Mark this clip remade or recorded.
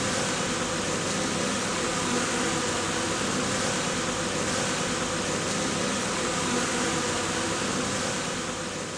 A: recorded